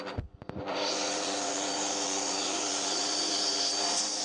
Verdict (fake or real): fake